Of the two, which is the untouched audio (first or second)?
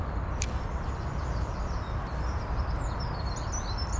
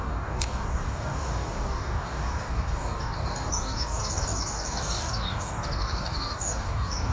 first